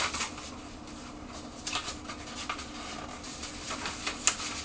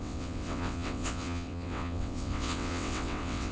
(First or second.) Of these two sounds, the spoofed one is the second